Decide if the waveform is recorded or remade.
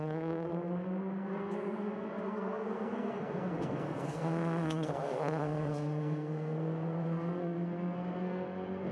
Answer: remade